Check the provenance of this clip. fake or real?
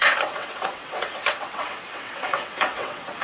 fake